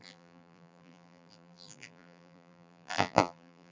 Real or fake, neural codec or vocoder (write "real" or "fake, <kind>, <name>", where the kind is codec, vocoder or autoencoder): fake, vocoder, BigVGAN v2